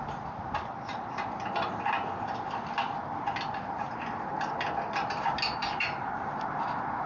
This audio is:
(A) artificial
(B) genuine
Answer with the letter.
B